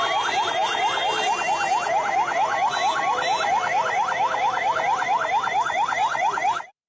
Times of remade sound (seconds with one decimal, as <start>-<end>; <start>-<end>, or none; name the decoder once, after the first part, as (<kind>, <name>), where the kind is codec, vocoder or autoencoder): none